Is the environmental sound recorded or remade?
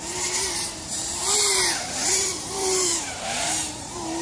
remade